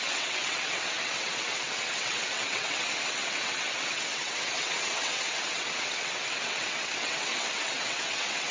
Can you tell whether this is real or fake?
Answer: fake